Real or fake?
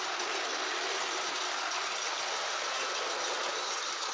real